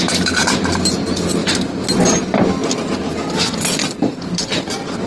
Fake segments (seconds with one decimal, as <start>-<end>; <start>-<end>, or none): none